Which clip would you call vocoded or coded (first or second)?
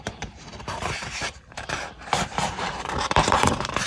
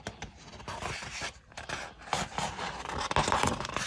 first